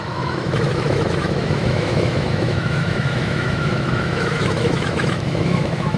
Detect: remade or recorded remade